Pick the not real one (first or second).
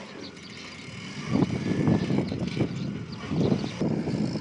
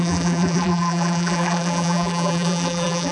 second